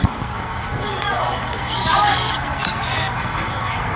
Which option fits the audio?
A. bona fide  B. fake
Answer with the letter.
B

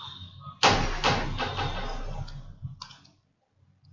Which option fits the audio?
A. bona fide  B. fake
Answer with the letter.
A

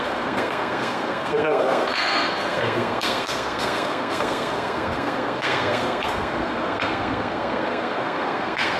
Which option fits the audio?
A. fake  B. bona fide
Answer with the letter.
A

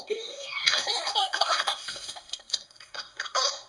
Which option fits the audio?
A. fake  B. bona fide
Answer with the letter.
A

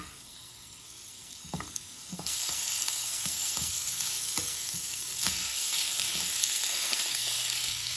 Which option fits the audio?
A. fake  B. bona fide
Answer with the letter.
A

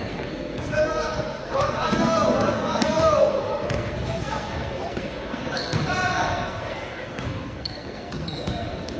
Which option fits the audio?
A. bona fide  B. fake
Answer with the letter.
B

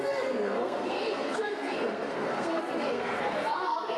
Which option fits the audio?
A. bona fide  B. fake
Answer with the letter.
B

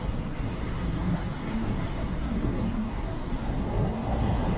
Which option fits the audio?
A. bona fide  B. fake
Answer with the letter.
B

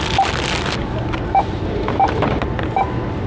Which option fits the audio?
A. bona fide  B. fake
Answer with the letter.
A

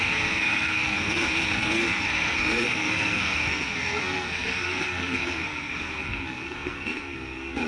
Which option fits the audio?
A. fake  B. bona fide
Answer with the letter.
A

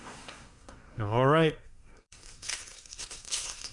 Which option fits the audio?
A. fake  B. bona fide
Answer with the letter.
A